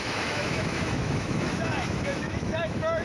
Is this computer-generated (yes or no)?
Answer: yes